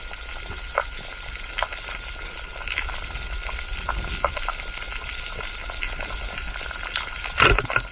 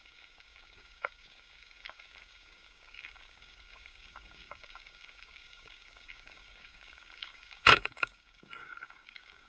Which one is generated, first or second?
second